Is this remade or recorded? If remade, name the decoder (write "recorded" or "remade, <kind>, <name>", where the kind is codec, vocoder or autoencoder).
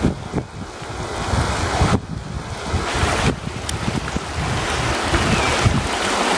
recorded